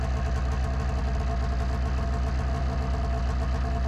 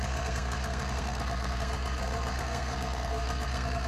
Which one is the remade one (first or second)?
second